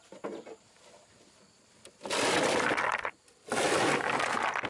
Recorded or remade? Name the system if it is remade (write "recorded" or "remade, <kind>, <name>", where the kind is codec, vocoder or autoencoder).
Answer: recorded